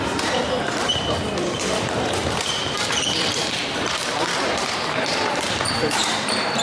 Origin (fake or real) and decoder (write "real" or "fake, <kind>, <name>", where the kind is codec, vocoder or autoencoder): fake, vocoder, BigVGAN v2